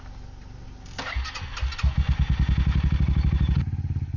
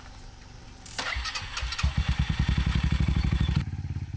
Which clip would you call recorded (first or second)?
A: first